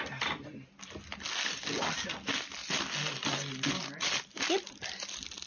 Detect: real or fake real